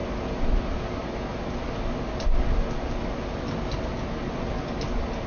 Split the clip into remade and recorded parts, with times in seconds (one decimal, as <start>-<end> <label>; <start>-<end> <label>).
0.0-5.3 recorded